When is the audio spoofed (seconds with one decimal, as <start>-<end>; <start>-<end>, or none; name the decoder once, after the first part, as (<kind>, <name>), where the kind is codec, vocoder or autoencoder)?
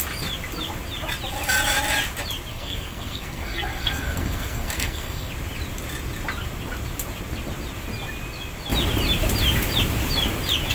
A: 2.5-5.3 (codec, SNAC)